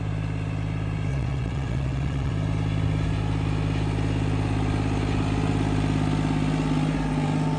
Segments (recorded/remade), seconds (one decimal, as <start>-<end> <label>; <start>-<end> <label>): 0.0-1.1 recorded; 1.1-2.3 remade; 2.3-7.6 recorded